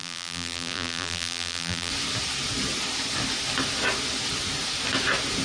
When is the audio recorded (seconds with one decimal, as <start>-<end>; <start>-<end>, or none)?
1.9-5.4

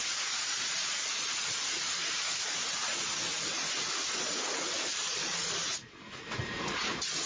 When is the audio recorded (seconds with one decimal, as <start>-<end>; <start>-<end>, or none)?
none